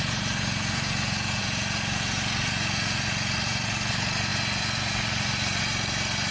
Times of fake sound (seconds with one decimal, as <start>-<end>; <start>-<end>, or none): 0.0-6.3